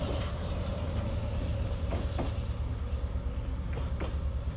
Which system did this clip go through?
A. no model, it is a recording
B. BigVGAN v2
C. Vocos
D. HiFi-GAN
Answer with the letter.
A